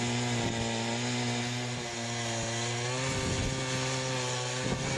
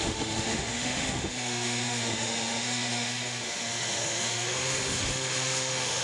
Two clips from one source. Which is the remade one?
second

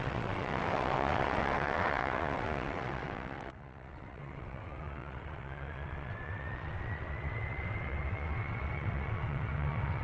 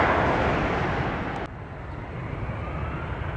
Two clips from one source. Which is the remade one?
first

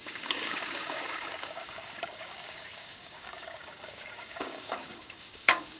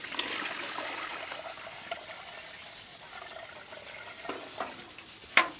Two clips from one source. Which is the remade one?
first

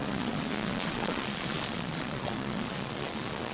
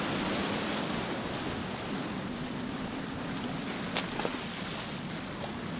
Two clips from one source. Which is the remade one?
first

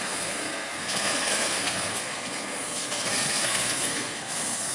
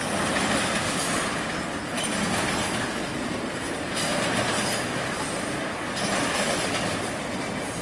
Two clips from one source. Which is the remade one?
first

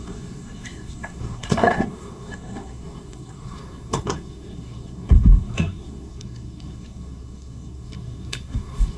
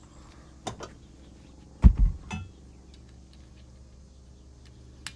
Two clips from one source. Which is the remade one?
first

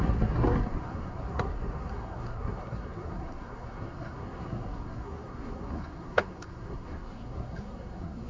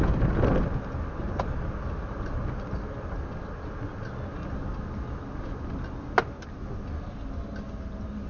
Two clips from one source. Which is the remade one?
first